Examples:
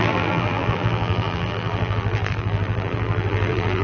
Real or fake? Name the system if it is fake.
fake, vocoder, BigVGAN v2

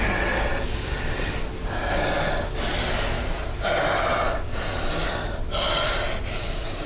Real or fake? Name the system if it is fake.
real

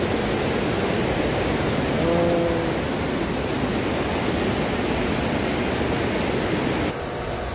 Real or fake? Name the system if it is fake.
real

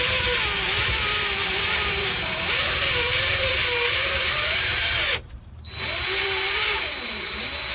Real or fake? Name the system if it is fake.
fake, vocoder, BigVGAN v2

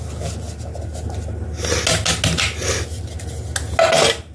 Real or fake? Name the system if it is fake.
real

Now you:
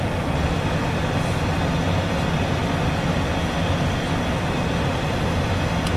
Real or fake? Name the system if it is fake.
real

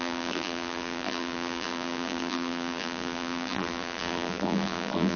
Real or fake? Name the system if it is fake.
fake, vocoder, BigVGAN v2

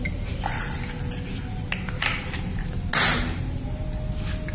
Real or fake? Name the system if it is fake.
real